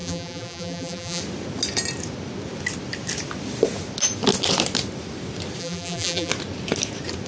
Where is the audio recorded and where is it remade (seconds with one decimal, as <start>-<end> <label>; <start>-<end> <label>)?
0.0-1.2 remade; 1.2-5.6 recorded; 5.6-6.3 remade; 6.3-7.3 recorded